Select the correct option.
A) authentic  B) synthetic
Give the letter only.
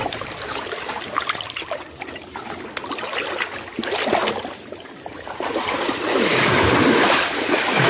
A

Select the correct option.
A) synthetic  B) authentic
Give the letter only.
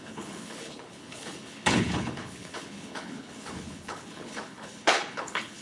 A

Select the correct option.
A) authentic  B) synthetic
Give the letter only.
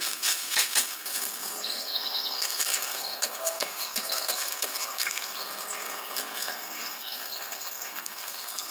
B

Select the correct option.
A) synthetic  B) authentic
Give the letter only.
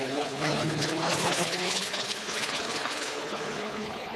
A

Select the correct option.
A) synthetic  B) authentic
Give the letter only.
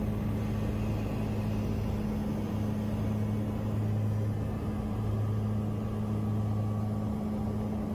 B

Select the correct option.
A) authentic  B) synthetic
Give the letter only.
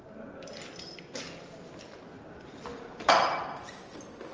A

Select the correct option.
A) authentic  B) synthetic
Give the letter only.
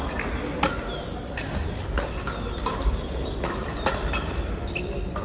A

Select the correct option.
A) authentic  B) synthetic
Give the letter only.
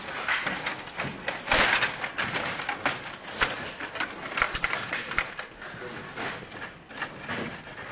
A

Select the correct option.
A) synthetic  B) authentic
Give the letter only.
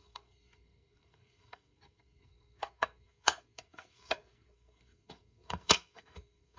A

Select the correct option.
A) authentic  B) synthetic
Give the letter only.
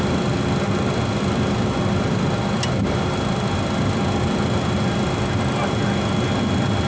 A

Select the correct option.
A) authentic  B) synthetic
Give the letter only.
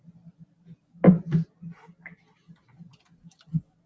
A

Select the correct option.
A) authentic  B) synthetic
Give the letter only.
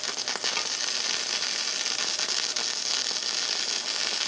A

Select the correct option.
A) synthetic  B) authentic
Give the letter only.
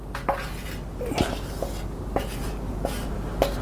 B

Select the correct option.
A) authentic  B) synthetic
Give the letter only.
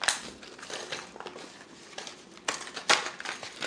A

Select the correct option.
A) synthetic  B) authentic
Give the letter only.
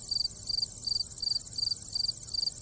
B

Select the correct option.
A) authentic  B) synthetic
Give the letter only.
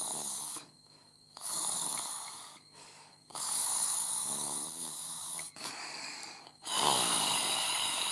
B